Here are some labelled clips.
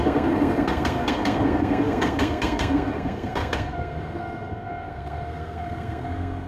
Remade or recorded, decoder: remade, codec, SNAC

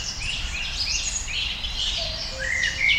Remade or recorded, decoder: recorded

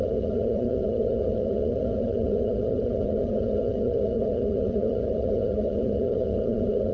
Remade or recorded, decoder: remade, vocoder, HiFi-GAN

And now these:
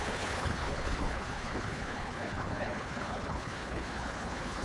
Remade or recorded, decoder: remade, codec, HILCodec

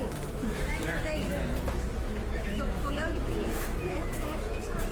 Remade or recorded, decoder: remade, autoencoder, DAC-VAE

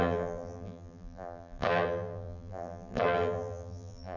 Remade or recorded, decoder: remade, vocoder, BigVGAN v2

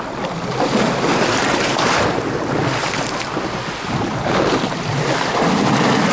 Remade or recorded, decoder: recorded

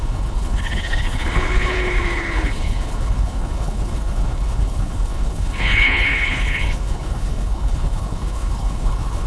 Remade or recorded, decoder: remade, codec, HILCodec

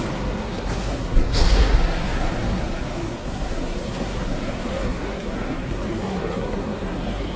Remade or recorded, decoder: remade, codec, SNAC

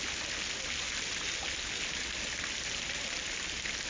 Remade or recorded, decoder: recorded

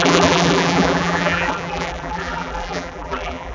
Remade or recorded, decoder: remade, vocoder, BigVGAN v2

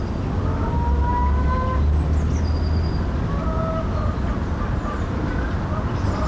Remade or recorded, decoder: recorded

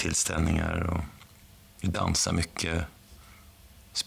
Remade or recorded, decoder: recorded